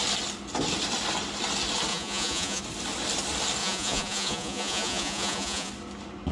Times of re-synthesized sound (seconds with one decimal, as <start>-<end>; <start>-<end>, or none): 1.9-2.6; 3.6-5.7